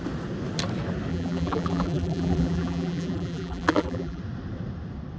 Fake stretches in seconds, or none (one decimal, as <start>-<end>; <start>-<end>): 1.1-4.2